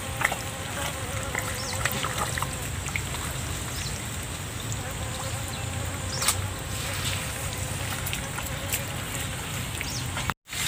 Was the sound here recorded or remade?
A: recorded